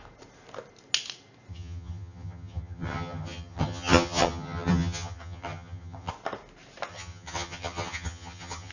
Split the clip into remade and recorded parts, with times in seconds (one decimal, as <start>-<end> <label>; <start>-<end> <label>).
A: 0.0-1.5 recorded; 1.5-6.1 remade; 6.1-6.9 recorded; 6.9-8.7 remade